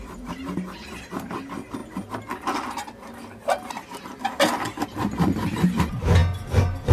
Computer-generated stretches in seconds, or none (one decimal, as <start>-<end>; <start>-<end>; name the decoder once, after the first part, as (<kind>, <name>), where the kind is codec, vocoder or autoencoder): none